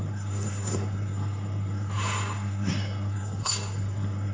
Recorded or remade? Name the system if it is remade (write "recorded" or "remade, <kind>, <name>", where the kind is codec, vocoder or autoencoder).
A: remade, codec, SNAC